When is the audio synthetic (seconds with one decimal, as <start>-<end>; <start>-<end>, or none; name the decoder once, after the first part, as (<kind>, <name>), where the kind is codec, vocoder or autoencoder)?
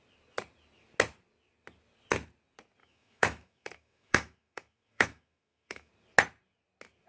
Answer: 2.8-5.9 (autoencoder, DAC-VAE)